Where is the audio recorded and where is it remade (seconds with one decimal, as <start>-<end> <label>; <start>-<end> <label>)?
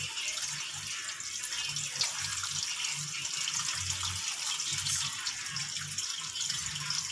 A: 0.0-2.3 recorded; 2.3-6.6 remade; 6.6-7.1 recorded